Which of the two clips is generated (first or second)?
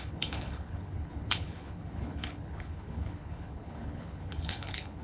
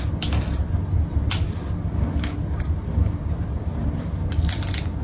first